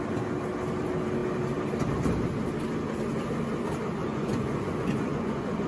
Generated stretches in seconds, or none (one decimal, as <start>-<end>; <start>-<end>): 4.0-5.7